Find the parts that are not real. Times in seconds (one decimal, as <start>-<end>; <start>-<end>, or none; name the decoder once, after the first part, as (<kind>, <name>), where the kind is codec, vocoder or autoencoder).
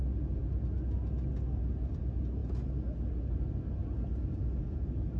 none